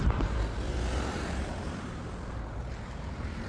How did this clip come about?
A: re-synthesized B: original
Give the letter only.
A